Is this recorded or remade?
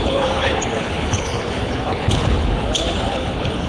remade